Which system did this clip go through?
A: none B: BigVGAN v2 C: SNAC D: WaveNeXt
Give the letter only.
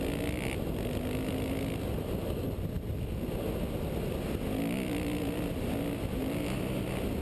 A